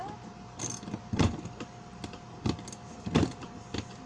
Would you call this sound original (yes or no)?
yes